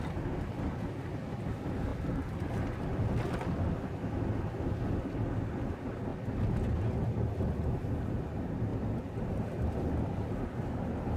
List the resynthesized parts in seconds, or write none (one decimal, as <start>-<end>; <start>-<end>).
none